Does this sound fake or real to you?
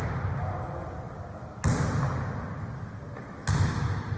real